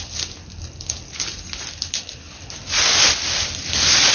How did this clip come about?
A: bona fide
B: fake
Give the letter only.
A